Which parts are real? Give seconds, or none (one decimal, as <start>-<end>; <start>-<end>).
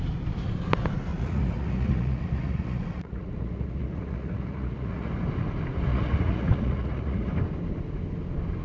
0.0-1.1; 5.1-5.9; 7.3-8.6